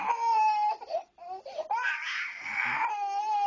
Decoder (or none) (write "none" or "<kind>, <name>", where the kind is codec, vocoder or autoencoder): none